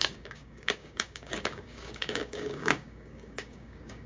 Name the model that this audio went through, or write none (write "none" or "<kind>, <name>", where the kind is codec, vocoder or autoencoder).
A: codec, DAC